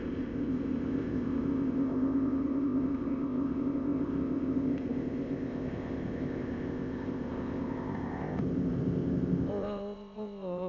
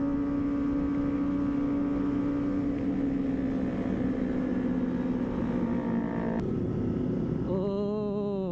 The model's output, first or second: first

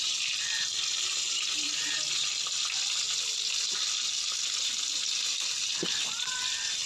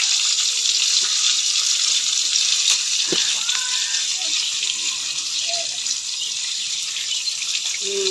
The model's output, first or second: second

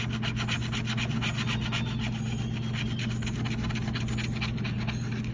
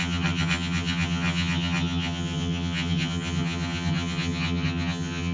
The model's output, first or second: second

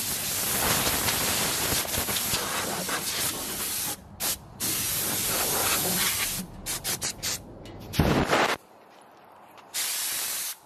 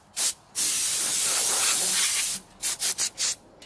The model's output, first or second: first